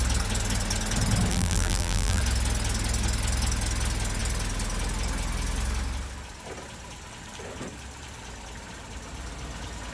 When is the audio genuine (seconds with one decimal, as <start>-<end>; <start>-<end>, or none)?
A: 0.0-1.3; 2.2-9.9